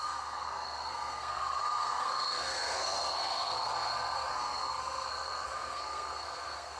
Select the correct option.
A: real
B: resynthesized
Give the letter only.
B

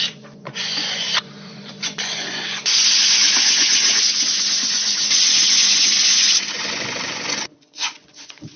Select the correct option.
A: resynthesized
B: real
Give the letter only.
A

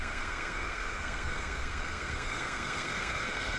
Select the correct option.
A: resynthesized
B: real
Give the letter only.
A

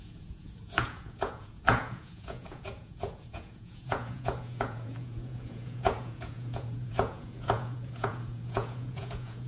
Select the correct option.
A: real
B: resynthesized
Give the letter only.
B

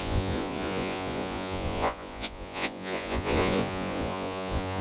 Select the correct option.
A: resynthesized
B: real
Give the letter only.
A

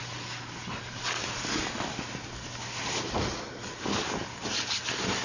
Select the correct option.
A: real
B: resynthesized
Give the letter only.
A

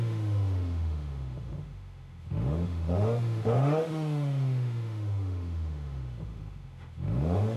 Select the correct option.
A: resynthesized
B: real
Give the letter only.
A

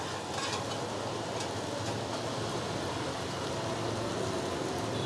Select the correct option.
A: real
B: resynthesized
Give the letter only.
A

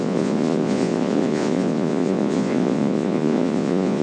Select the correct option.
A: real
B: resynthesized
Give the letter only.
B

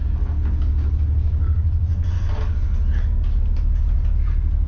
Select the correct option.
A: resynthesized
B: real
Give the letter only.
B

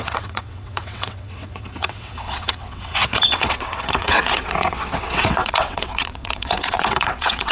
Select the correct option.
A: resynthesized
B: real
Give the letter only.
A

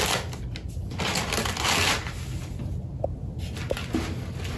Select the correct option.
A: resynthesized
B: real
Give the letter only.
B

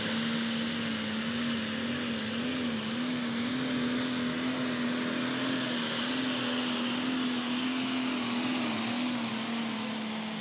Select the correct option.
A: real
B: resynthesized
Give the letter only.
A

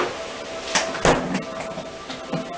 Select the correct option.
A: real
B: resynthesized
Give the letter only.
A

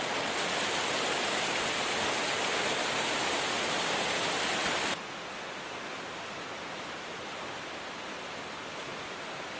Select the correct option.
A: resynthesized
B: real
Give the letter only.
B